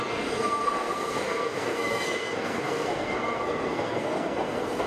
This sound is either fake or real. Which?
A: fake